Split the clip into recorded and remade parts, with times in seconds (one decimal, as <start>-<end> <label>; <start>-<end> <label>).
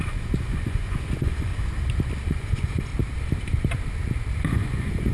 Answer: 0.0-1.5 remade; 1.5-2.3 recorded; 2.3-2.9 remade; 2.9-4.5 recorded; 4.5-5.1 remade